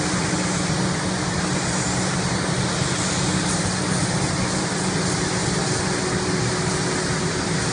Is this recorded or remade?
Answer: recorded